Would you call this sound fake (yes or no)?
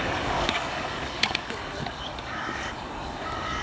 yes